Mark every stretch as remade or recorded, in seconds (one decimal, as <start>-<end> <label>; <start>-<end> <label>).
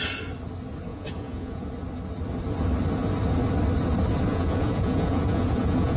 0.0-0.9 recorded; 0.9-1.7 remade; 1.7-4.3 recorded; 4.3-6.0 remade